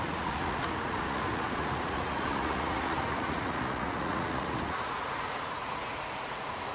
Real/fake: fake